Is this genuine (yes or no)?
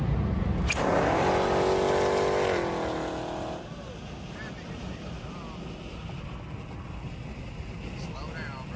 yes